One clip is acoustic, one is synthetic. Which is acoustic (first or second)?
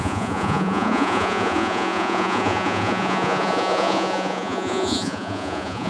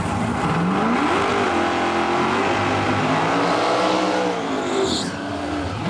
second